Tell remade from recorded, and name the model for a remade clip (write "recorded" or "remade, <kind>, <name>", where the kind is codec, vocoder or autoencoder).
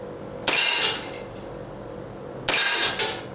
recorded